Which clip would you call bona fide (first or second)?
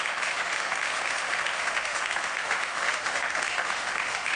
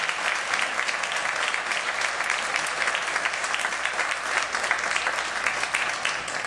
second